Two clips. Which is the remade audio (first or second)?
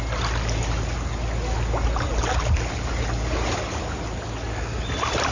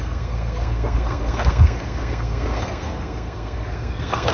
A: second